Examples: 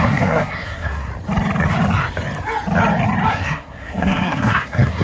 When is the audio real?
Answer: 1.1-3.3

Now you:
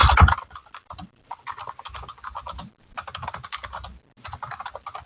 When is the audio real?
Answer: 1.6-5.1

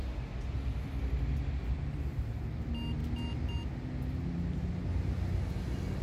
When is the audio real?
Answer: 0.0-6.0

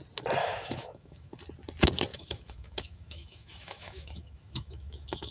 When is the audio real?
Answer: 0.0-0.4; 1.3-2.1